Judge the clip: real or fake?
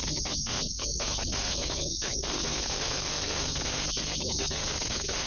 fake